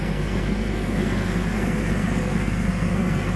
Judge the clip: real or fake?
fake